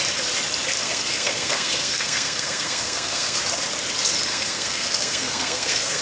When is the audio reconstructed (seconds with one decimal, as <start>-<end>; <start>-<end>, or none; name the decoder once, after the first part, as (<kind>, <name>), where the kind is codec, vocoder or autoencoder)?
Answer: 0.8-3.4 (codec, SNAC); 4.3-6.0